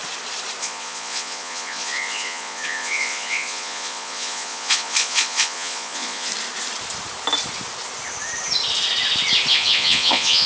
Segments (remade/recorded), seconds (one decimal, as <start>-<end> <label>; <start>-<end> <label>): 0.0-0.6 recorded; 0.6-6.3 remade; 6.3-9.5 recorded; 9.5-10.5 remade